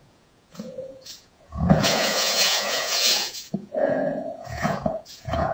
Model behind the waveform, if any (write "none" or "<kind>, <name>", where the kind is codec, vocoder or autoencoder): vocoder, Vocos